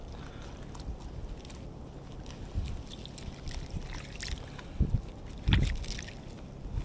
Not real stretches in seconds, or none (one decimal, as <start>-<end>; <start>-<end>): none

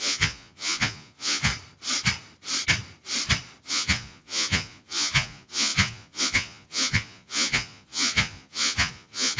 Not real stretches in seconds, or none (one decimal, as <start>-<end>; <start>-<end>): 0.0-1.5; 3.7-9.4

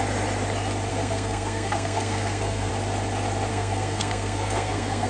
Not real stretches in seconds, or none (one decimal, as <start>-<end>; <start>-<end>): 0.9-2.7; 3.5-5.1